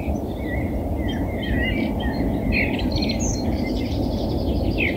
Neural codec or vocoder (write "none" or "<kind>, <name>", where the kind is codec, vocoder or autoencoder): none